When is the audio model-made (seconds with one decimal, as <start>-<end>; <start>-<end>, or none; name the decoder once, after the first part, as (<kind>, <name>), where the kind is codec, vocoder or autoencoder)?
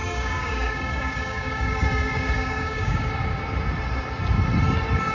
0.0-3.1 (codec, DAC)